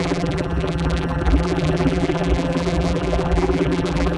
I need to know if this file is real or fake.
fake